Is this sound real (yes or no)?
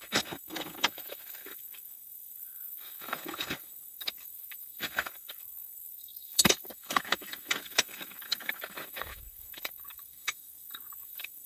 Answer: no